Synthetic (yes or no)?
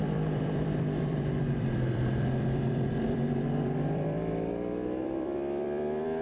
yes